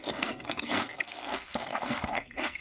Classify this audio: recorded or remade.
remade